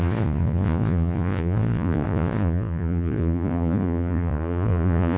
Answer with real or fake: fake